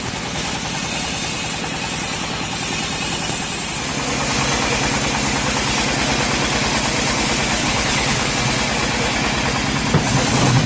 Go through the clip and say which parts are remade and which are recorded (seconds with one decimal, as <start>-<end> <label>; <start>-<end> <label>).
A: 0.0-7.6 recorded; 7.6-8.3 remade; 8.3-10.7 recorded